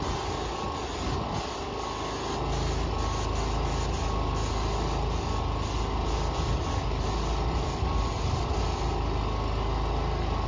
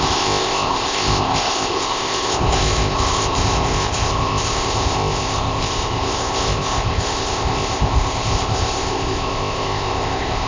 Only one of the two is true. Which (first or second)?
first